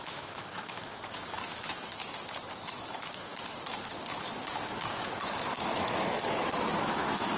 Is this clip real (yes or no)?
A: no